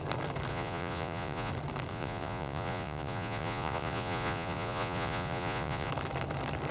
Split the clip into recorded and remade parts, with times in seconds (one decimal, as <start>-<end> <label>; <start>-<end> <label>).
0.0-0.5 recorded; 0.5-1.5 remade; 1.5-1.9 recorded; 1.9-5.9 remade; 5.9-6.7 recorded

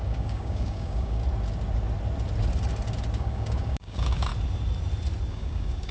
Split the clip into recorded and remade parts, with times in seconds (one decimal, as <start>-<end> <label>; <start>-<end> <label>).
0.0-1.2 remade; 1.2-3.2 recorded; 3.2-4.3 remade; 4.3-5.3 recorded; 5.3-5.9 remade